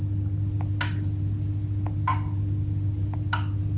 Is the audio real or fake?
real